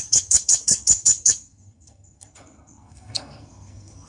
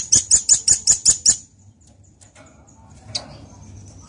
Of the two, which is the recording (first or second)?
second